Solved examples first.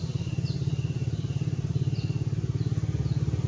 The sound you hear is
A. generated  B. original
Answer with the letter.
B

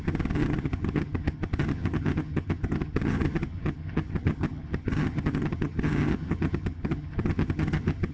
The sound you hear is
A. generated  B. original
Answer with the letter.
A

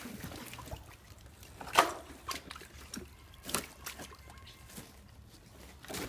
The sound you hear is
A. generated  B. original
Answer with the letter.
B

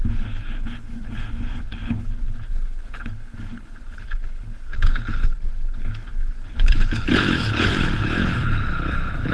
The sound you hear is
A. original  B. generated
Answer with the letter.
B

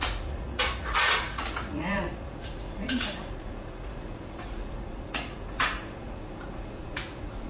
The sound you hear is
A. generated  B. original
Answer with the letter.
A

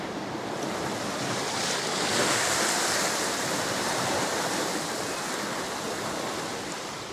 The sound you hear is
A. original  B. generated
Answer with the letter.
B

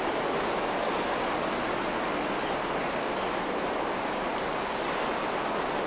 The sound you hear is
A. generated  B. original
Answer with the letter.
B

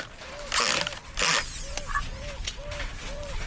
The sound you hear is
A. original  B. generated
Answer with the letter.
A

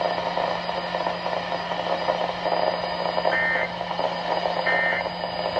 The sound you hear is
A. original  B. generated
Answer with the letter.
A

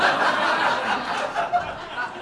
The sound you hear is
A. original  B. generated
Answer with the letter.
A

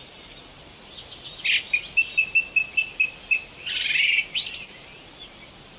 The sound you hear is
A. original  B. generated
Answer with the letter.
A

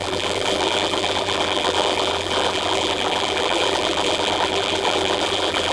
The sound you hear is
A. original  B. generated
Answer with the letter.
B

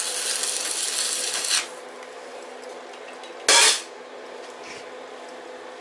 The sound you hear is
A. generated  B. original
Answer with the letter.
B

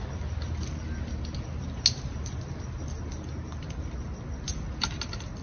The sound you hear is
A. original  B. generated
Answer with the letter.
A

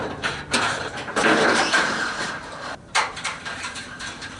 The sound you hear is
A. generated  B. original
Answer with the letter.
A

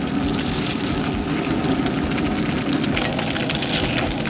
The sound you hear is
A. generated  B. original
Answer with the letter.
B